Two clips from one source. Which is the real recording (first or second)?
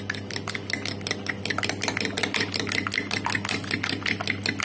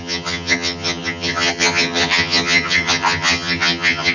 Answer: first